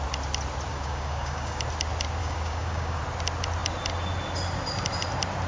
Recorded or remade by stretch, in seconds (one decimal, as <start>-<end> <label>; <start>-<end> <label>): 0.0-0.7 recorded; 0.7-1.6 remade; 1.6-2.2 recorded; 2.2-3.0 remade; 3.0-5.5 recorded